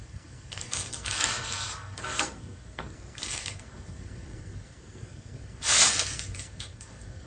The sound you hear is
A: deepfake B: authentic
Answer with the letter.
A